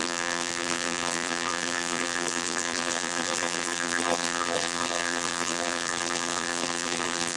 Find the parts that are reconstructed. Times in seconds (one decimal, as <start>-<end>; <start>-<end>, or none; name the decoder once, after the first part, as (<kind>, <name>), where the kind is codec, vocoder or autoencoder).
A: 0.0-7.4 (vocoder, BigVGAN v2)

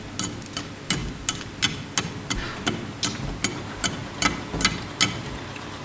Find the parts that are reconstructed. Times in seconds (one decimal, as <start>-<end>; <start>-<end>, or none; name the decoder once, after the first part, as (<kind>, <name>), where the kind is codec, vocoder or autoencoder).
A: none

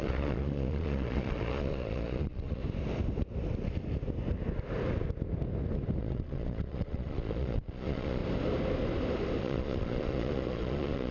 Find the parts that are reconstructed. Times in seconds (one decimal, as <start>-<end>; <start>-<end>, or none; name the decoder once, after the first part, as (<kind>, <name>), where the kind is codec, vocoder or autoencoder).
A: 0.0-2.6 (vocoder, Vocos); 6.0-8.2; 9.4-11.1

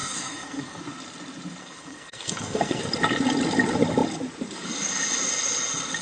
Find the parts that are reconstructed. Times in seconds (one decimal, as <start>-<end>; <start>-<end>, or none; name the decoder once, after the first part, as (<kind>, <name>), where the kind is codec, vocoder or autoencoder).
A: 0.0-0.8 (codec, SNAC); 1.6-2.8

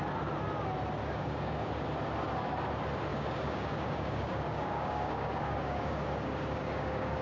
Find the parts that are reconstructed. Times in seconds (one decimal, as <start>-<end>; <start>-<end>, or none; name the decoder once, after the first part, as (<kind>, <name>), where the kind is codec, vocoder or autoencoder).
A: 1.0-1.7 (codec, DAC); 3.1-7.2

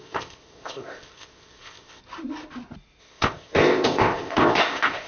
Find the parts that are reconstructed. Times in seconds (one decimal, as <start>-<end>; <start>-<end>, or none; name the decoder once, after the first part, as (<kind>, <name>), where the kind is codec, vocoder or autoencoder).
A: 0.0-2.0 (codec, ZipCodec); 3.0-5.1